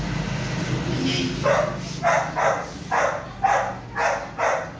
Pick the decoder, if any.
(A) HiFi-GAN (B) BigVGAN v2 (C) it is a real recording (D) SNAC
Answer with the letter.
C